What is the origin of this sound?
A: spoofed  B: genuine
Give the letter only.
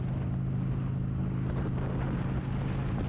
B